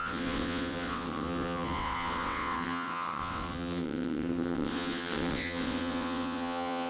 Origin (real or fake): fake